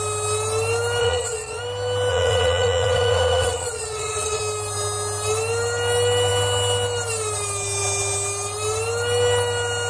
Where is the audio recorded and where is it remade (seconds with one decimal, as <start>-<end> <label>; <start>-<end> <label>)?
0.0-1.0 recorded; 1.0-1.6 remade; 1.6-2.1 recorded; 2.1-4.4 remade; 4.4-9.9 recorded